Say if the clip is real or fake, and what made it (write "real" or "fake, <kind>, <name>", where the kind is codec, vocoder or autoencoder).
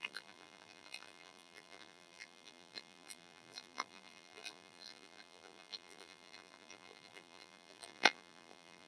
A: fake, vocoder, BigVGAN v2